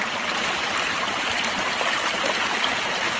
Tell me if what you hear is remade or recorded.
recorded